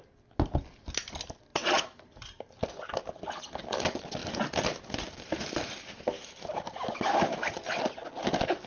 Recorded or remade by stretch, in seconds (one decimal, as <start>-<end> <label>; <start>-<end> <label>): 0.0-1.5 recorded; 1.5-2.7 remade; 2.7-4.2 recorded; 4.2-7.7 remade; 7.7-8.7 recorded